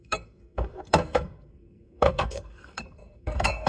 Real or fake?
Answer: fake